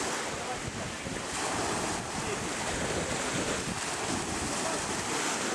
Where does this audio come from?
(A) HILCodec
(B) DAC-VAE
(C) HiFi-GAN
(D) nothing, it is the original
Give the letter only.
D